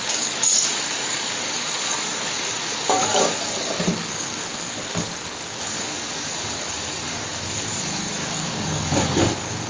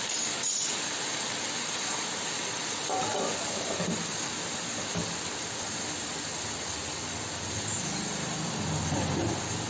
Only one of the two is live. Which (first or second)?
second